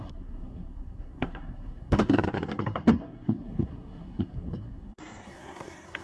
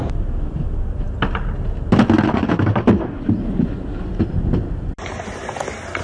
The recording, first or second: second